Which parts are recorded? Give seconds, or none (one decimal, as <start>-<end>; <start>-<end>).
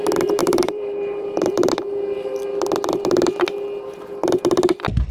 0.0-0.4; 1.7-5.1